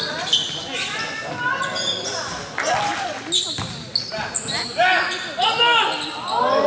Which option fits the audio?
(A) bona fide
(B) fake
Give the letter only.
A